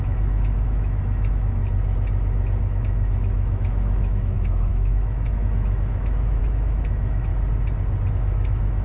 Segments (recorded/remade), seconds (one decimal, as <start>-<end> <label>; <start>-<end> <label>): 0.0-1.6 remade; 1.6-2.6 recorded; 2.6-7.3 remade; 7.3-8.1 recorded; 8.1-8.8 remade